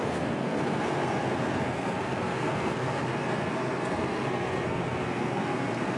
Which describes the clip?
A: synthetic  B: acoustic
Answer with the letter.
A